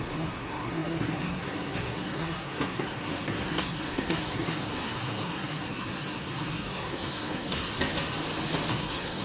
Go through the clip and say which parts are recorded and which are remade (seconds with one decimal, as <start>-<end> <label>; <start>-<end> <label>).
0.0-7.7 remade; 7.7-8.7 recorded; 8.7-9.2 remade